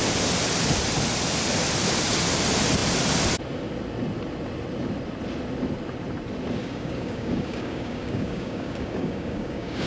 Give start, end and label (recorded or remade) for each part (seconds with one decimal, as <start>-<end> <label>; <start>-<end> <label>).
0.0-6.6 recorded; 6.6-9.9 remade

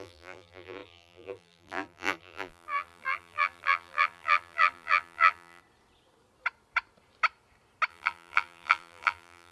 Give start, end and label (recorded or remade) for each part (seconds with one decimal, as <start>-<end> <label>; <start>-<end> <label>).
0.0-5.6 remade; 5.6-7.9 recorded; 7.9-9.5 remade

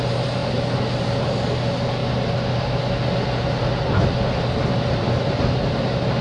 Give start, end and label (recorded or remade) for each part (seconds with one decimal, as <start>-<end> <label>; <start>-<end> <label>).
0.0-6.2 recorded

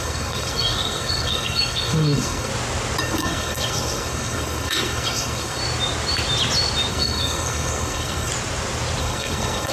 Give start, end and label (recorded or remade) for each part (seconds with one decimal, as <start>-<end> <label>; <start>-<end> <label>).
0.0-2.5 remade; 2.5-3.0 recorded; 3.0-5.6 remade; 5.6-6.9 recorded; 6.9-8.3 remade; 8.3-9.0 recorded; 9.0-9.7 remade